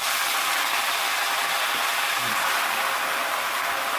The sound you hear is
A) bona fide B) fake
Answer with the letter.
A